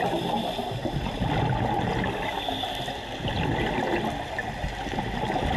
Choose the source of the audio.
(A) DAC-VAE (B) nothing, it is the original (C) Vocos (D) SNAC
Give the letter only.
B